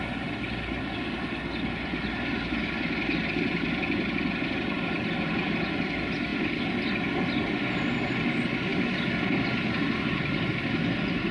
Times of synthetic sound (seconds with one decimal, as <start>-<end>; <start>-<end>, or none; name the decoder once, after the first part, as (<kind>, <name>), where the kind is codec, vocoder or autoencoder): none